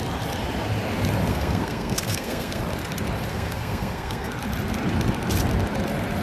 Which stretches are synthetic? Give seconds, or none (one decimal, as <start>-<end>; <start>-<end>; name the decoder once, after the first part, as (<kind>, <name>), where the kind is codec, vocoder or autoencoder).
1.3-2.6 (codec, SNAC); 3.3-4.3